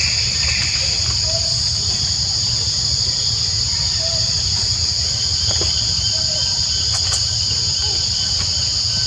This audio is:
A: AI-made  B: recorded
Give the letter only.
B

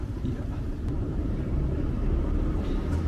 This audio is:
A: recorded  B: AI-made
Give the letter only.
B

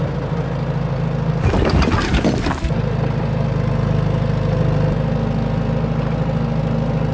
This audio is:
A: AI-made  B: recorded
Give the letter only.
B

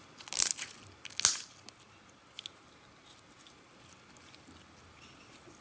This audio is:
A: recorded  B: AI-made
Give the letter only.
A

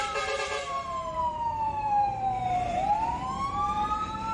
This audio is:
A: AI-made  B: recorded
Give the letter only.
A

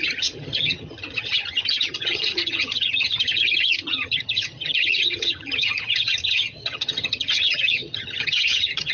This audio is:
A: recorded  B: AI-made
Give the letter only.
B